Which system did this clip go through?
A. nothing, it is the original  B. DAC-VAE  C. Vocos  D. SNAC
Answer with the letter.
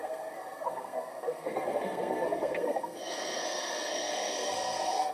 D